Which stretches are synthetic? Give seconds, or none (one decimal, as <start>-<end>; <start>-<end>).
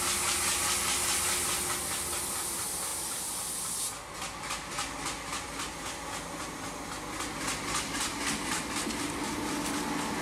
none